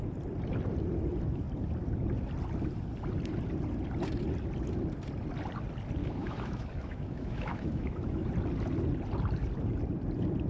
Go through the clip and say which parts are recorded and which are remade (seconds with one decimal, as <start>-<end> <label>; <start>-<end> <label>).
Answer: 0.0-6.0 recorded; 6.0-8.3 remade; 8.3-10.5 recorded